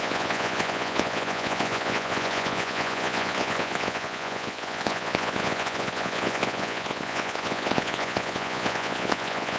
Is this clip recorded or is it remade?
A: remade